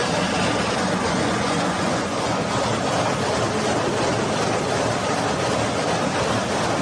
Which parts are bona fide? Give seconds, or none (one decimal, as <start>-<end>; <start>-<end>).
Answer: 0.0-0.8; 2.4-6.8